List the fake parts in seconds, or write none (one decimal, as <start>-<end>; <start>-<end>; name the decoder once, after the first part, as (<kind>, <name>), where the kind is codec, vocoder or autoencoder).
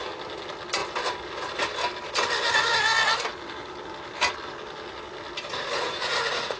5.5-6.6 (vocoder, Vocos)